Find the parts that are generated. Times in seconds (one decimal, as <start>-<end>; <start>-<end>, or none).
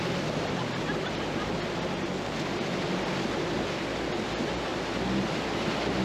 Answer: none